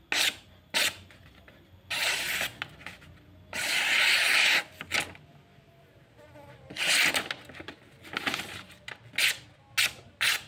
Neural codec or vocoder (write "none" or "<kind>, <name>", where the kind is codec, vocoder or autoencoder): none